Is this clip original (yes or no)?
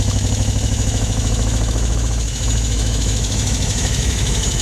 no